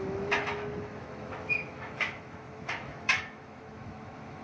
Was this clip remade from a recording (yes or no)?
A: yes